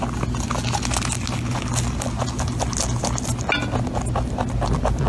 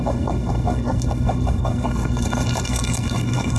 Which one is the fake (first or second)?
second